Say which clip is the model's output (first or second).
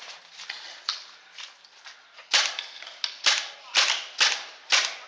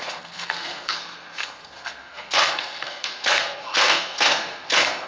second